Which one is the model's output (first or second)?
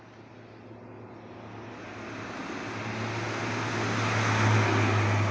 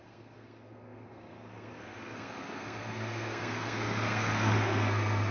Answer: second